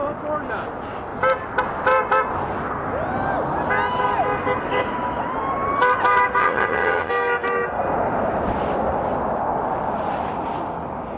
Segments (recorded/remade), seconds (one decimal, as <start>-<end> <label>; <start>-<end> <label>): 0.0-6.4 recorded; 6.4-7.1 remade; 7.1-11.2 recorded